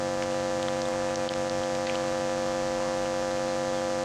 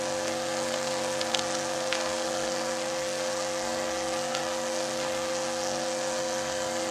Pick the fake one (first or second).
second